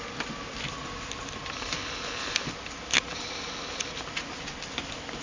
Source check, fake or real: real